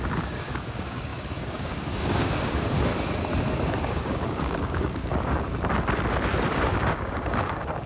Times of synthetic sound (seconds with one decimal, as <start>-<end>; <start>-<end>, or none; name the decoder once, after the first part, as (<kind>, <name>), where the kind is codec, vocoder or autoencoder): 0.0-2.9 (codec, DAC); 3.7-5.5; 6.5-7.9